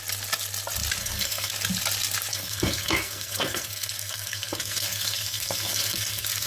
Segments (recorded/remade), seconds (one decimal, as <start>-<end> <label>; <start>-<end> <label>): 0.0-1.0 recorded; 1.0-1.5 remade; 1.5-2.3 recorded; 2.3-6.5 remade